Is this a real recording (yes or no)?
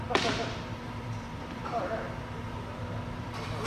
no